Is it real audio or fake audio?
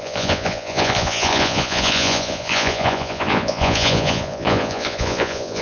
fake